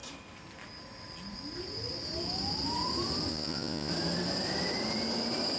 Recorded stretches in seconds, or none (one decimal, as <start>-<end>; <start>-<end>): 0.0-3.3; 3.9-5.6